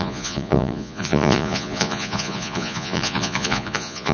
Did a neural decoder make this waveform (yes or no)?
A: yes